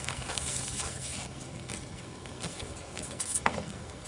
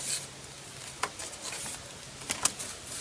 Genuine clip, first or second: second